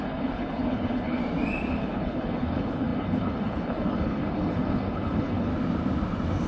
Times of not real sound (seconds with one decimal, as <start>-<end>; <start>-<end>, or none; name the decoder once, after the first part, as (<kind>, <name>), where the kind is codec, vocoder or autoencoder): 0.0-1.2 (codec, HILCodec); 1.7-5.5